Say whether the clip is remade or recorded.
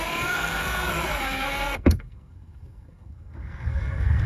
remade